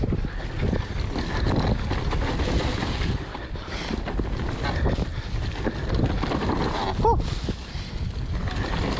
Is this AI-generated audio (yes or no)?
no